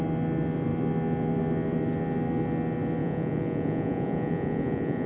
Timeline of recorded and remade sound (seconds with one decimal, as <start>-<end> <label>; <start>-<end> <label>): 0.0-3.0 recorded; 3.0-5.1 remade

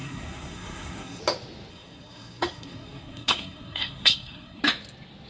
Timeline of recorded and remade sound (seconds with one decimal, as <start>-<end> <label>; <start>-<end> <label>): 0.0-1.2 remade; 1.2-1.7 recorded; 1.7-4.6 remade; 4.6-5.3 recorded